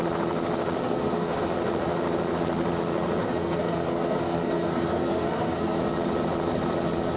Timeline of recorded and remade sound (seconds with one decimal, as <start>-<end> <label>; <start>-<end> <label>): 0.0-0.8 recorded; 0.8-1.4 remade; 1.4-3.2 recorded; 3.2-5.8 remade; 5.8-7.2 recorded